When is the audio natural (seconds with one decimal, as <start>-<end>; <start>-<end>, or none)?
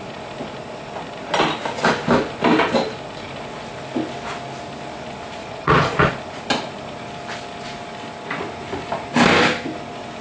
0.0-5.4; 6.1-10.2